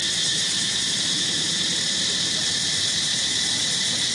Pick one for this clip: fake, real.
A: fake